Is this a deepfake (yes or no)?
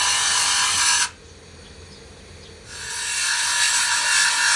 no